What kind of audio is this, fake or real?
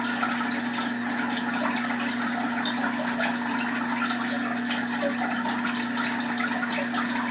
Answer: real